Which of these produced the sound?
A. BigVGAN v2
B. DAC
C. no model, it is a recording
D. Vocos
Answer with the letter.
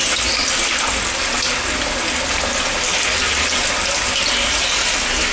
C